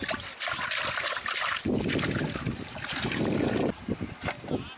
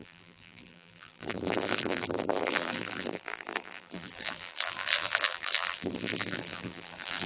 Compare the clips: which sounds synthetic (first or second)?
second